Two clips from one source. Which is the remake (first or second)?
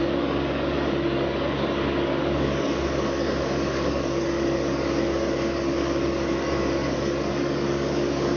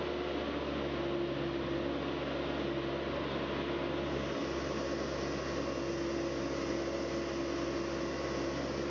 first